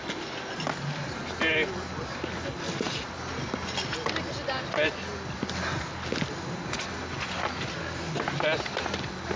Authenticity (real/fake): real